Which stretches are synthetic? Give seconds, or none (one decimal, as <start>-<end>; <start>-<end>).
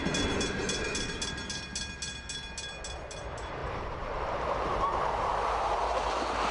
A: 3.6-6.5